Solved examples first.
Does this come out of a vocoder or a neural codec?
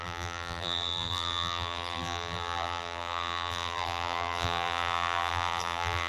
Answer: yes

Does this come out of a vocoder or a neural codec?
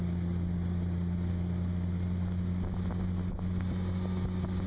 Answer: no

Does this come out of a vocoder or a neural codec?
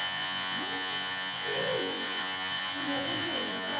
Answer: yes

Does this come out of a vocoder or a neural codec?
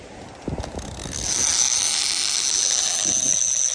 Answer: no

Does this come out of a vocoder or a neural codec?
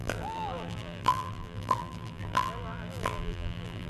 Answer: yes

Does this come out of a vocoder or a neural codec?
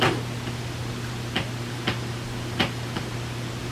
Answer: yes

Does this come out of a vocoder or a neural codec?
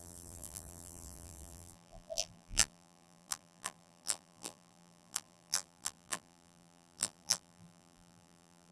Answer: yes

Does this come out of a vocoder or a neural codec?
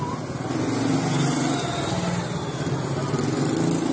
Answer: no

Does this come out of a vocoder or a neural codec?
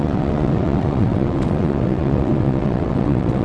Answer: yes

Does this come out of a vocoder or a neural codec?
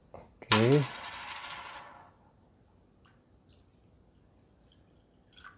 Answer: no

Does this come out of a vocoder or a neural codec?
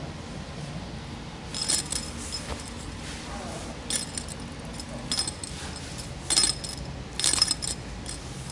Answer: no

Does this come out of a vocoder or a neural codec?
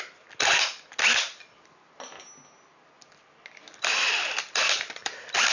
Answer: no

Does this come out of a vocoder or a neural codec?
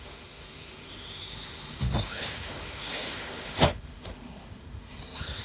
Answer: yes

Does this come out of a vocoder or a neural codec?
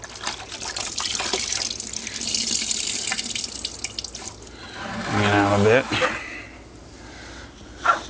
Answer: no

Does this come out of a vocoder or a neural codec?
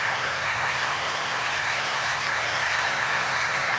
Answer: yes